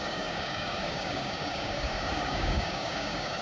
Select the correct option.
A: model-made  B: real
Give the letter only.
A